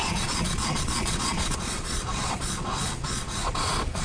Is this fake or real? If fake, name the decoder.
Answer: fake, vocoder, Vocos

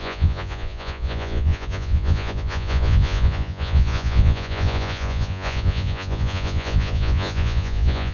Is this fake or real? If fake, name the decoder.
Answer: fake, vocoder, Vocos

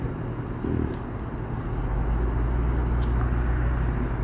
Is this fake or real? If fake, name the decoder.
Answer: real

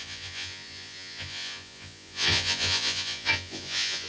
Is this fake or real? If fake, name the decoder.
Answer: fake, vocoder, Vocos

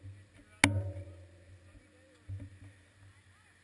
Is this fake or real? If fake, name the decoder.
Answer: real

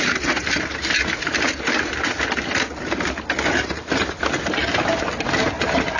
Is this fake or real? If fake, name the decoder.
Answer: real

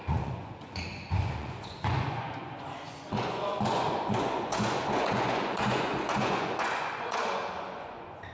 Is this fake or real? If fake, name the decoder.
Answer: fake, vocoder, Vocos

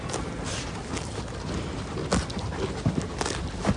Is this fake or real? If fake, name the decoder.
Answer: real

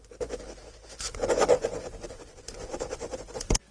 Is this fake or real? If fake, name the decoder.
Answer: fake, vocoder, Vocos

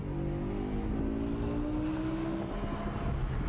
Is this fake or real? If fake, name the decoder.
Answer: real